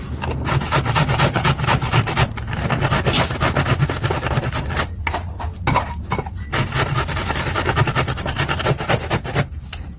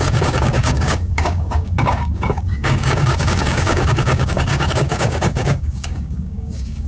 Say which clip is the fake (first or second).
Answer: second